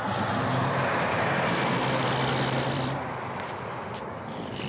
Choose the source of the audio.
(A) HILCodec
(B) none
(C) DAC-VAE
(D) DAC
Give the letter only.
B